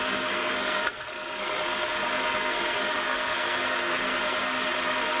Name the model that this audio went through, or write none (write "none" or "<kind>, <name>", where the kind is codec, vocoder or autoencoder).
codec, SNAC